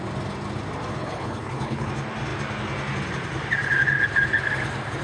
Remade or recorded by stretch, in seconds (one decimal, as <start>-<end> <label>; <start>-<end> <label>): 0.0-0.9 recorded; 0.9-1.9 remade; 1.9-5.0 recorded